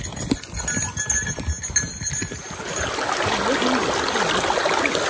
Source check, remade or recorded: recorded